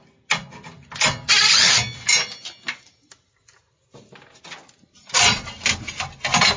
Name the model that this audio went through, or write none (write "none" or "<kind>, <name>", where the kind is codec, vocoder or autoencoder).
none